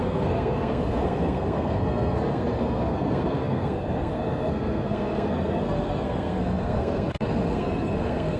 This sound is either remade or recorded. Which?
remade